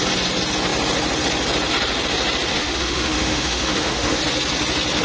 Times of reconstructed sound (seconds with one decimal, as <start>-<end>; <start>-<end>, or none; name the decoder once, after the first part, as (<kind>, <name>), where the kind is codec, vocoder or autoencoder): 2.5-4.2 (autoencoder, DAC-VAE)